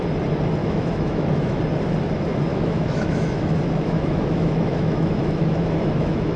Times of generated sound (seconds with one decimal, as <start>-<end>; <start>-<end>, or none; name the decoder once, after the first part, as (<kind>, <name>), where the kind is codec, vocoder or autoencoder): 0.6-1.6 (autoencoder, DAC-VAE); 2.5-6.4